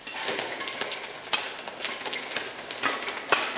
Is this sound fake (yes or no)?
no